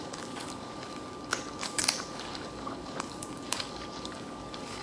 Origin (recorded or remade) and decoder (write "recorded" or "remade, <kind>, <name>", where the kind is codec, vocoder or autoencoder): remade, codec, DAC